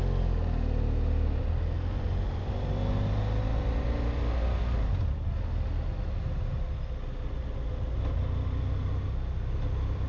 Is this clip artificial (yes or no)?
no